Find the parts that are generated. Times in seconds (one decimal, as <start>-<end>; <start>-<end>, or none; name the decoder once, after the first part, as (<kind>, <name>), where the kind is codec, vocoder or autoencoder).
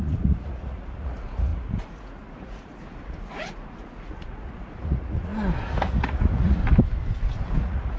0.0-5.3 (vocoder, Vocos); 5.8-6.6; 7.6-8.0